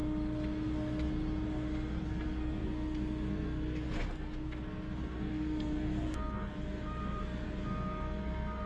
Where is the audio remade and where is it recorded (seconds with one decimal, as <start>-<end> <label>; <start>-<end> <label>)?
0.0-2.0 recorded; 2.0-8.7 remade